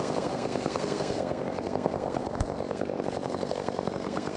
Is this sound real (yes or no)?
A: no